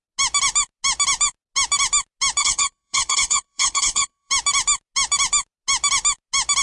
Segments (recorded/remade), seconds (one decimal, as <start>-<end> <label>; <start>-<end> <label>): 0.0-2.4 recorded; 2.4-4.3 remade; 4.3-6.6 recorded